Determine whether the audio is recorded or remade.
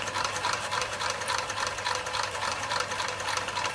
remade